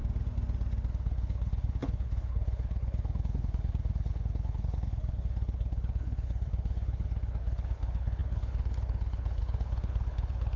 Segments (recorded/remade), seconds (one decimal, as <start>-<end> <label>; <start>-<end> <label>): 0.0-0.9 recorded; 0.9-10.6 remade